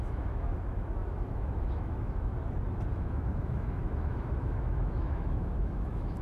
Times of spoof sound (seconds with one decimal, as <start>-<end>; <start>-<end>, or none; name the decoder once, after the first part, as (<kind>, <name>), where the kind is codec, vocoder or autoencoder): 0.0-2.3 (autoencoder, DAC-VAE); 2.9-6.2